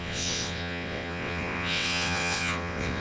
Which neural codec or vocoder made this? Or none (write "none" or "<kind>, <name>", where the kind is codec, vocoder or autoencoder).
vocoder, WaveNeXt